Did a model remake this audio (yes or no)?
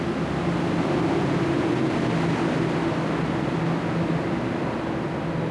no